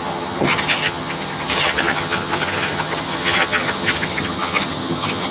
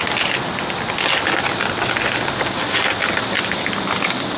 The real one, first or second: second